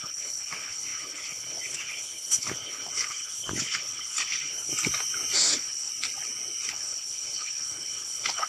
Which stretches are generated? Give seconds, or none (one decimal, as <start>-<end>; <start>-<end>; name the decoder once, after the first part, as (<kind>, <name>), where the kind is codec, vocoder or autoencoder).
0.0-4.7 (codec, HILCodec); 5.4-5.9; 6.7-8.5